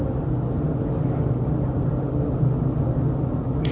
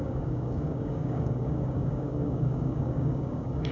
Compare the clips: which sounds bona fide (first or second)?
first